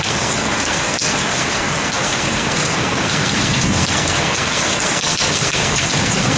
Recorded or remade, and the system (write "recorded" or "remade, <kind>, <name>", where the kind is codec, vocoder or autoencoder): remade, codec, SNAC